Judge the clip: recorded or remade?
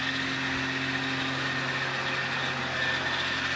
recorded